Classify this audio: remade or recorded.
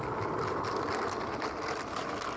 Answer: recorded